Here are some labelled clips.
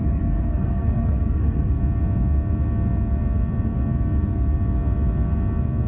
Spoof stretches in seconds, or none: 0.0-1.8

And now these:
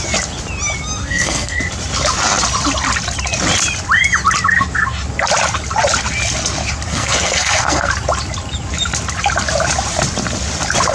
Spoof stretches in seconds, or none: 1.0-1.6; 6.9-7.9

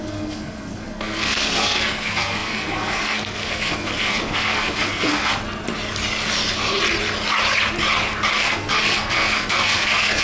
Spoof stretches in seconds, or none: 0.0-5.3; 8.3-10.2